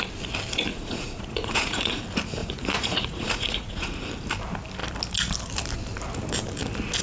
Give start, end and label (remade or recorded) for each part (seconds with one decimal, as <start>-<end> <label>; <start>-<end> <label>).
0.0-0.7 recorded; 0.7-2.0 remade; 2.0-2.4 recorded; 2.4-4.1 remade; 4.1-7.0 recorded